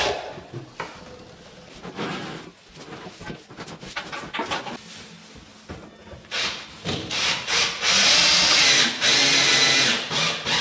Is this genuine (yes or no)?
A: yes